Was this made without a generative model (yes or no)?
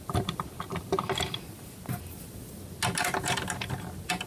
yes